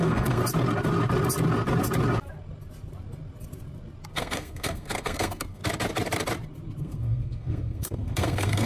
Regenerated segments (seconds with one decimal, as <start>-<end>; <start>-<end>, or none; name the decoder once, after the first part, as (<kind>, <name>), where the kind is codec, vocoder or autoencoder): 0.0-0.4 (codec, SNAC); 4.1-5.6; 6.8-8.7